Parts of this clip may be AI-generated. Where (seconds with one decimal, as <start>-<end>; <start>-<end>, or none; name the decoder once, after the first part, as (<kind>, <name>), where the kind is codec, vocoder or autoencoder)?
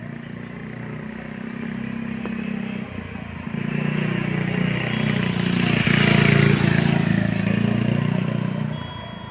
none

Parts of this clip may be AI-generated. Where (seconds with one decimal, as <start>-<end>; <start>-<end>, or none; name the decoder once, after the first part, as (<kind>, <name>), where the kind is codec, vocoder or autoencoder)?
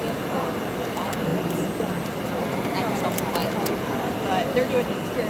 none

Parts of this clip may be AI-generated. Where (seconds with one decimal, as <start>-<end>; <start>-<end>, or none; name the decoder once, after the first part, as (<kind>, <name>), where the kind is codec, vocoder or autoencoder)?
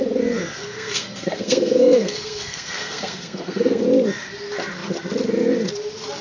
0.4-3.8 (codec, SNAC)